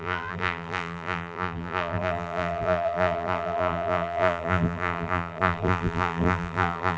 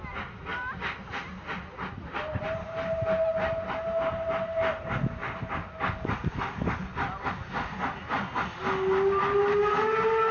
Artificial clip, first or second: first